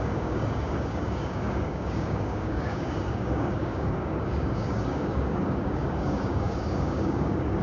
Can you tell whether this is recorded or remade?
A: remade